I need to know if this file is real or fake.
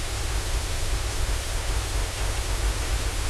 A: fake